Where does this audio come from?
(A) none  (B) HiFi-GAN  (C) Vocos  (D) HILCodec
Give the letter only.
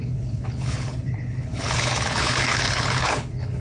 D